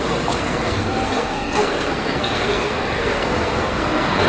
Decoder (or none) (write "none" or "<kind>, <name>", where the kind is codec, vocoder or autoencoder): codec, SNAC